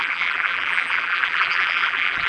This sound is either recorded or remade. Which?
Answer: remade